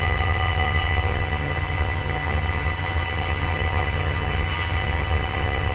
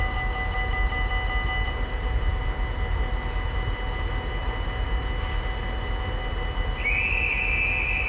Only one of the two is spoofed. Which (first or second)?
first